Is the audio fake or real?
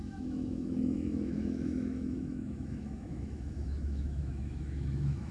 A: fake